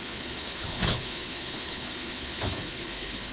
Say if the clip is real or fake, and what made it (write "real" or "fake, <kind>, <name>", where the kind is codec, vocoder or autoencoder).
fake, codec, HILCodec